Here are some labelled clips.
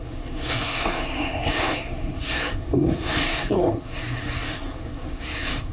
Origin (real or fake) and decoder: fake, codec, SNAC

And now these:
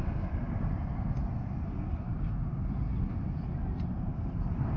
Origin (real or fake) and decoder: fake, vocoder, BigVGAN v2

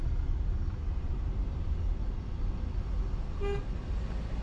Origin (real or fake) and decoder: real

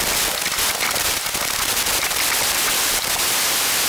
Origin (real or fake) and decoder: real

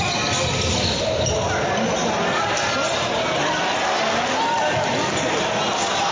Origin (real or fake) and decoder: real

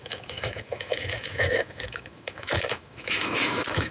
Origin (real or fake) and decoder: fake, autoencoder, DAC-VAE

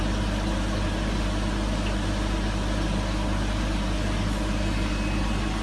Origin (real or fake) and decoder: real